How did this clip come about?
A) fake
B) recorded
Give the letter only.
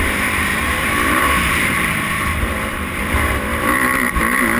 A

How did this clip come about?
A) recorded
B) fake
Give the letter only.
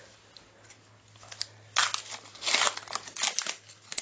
A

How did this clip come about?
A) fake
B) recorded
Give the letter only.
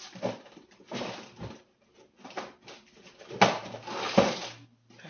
B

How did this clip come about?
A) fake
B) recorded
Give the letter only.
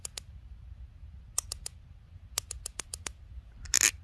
B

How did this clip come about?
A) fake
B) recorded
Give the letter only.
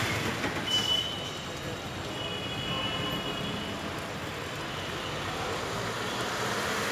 B